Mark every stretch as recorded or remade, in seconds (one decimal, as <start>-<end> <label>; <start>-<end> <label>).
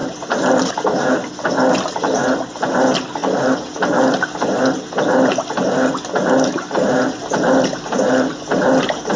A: 0.0-9.2 recorded